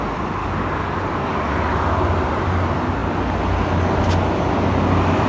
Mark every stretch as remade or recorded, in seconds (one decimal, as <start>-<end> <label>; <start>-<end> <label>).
0.0-0.4 recorded; 0.4-1.5 remade; 1.5-5.3 recorded